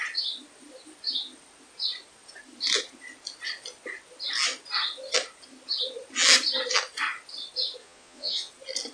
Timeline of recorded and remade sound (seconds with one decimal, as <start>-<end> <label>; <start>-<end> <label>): 0.0-7.8 recorded; 7.8-8.5 remade; 8.5-8.9 recorded